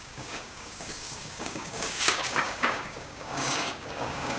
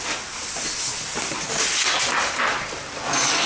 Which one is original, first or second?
second